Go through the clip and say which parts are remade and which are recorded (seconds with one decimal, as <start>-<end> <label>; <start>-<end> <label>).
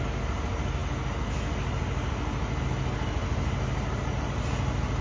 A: 0.0-5.0 recorded